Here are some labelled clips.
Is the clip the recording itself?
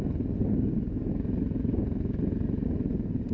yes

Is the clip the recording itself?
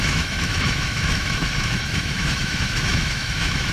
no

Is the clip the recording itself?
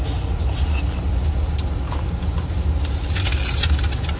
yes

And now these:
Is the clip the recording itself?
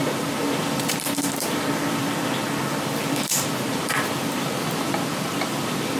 no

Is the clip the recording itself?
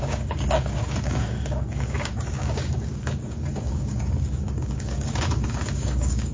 no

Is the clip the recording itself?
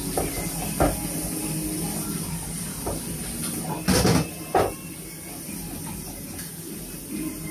yes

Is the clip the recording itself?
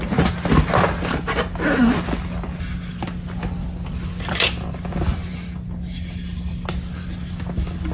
yes